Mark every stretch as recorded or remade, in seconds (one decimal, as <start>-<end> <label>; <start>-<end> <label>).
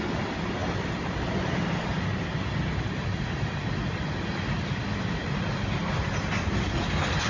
0.0-7.3 recorded